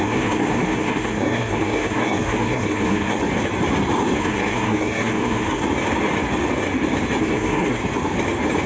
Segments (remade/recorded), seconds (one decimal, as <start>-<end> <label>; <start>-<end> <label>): 0.0-3.2 remade; 3.2-4.2 recorded; 4.2-5.6 remade; 5.6-7.2 recorded; 7.2-7.8 remade; 7.8-8.7 recorded